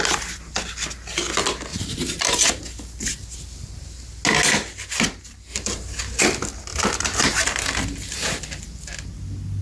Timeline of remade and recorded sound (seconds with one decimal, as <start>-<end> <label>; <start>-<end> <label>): 0.0-1.7 recorded; 1.7-2.6 remade; 2.6-5.5 recorded; 5.5-6.2 remade; 6.2-6.7 recorded; 6.7-8.4 remade; 8.4-9.6 recorded